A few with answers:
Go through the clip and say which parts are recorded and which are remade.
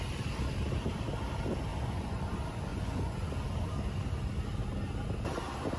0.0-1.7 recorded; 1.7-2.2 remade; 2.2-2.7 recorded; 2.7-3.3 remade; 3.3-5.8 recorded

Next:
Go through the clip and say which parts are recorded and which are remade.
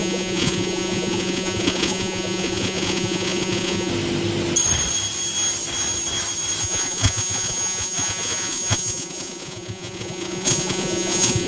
0.0-3.9 remade; 3.9-6.6 recorded; 6.6-11.5 remade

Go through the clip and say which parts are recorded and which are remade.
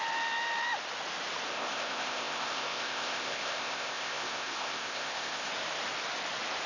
0.0-1.5 recorded; 1.5-5.5 remade; 5.5-6.7 recorded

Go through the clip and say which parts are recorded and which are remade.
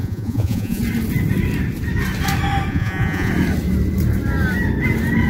0.0-0.8 remade; 0.8-2.7 recorded; 2.7-3.3 remade; 3.3-5.3 recorded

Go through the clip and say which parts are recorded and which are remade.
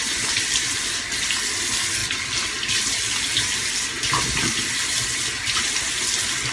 0.0-6.5 recorded